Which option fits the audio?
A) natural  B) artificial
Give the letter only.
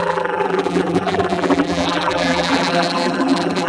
B